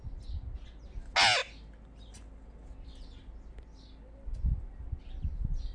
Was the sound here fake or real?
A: real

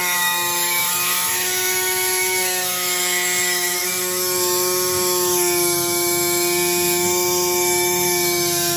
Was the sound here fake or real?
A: fake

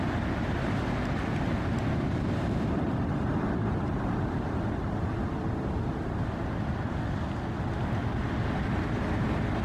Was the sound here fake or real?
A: real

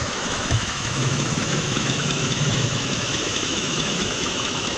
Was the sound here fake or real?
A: fake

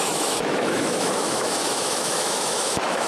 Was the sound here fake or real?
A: fake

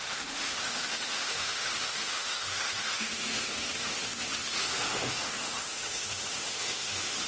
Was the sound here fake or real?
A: fake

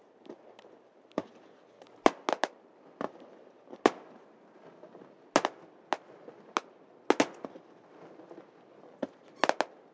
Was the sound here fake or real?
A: real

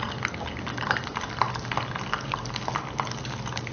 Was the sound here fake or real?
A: real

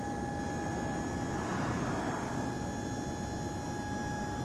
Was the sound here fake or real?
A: real